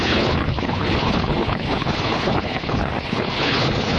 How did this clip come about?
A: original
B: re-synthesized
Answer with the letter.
B